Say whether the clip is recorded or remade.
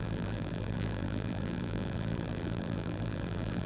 remade